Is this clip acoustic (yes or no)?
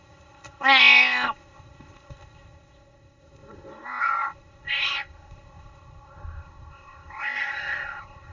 no